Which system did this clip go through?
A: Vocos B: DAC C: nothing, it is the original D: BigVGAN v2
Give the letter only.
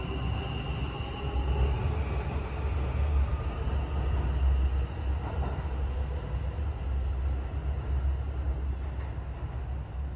C